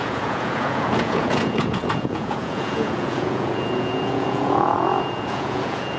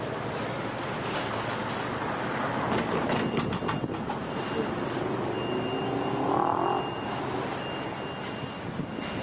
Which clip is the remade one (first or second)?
first